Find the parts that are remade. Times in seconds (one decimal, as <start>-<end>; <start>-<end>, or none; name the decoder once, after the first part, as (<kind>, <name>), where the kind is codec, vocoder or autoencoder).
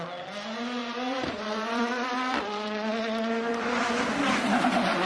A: 0.8-3.9 (vocoder, BigVGAN v2)